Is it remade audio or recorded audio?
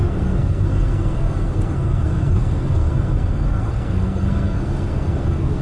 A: remade